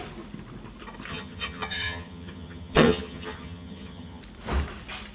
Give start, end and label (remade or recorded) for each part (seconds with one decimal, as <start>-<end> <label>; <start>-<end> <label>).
0.0-1.1 recorded; 1.1-4.2 remade; 4.2-5.1 recorded